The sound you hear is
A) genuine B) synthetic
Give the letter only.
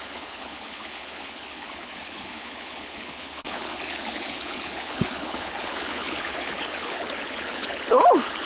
B